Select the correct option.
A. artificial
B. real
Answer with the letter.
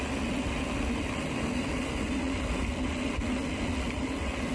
B